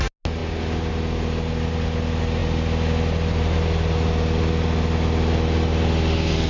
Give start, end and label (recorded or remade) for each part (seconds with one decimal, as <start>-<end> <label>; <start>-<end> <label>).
0.0-6.5 recorded